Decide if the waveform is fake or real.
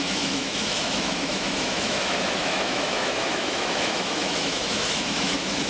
fake